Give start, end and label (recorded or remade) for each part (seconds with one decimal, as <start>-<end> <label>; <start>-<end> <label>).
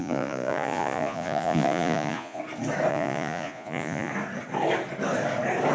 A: 0.0-2.4 remade; 2.4-2.9 recorded; 2.9-4.1 remade; 4.1-5.7 recorded